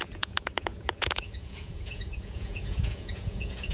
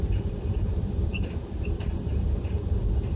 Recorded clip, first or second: second